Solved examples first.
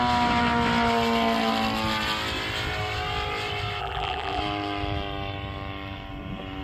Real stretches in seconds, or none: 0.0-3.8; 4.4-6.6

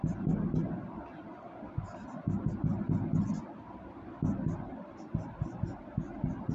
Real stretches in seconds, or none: 0.0-6.5